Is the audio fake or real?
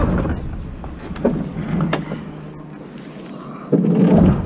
real